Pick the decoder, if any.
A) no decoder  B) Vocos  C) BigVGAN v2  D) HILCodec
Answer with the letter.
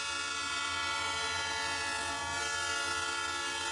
A